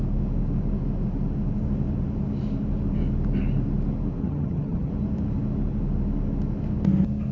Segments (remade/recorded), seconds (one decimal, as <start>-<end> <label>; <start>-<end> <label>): 0.0-4.2 recorded; 4.2-4.9 remade; 4.9-7.3 recorded

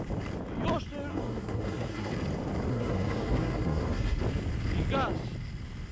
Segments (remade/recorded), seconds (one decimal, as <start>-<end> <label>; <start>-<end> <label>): 0.0-1.1 recorded; 1.1-2.1 remade; 2.1-2.7 recorded; 2.7-4.2 remade; 4.2-5.9 recorded